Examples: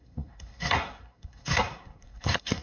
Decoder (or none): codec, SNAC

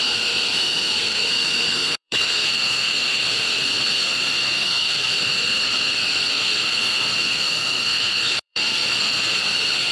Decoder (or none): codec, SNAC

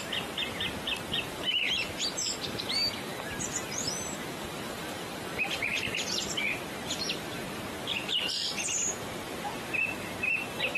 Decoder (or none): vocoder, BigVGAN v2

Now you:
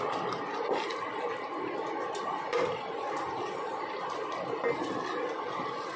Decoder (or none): none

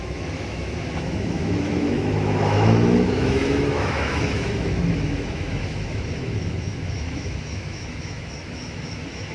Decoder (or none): autoencoder, DAC-VAE